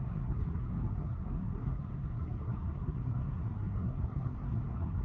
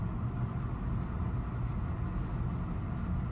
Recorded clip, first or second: second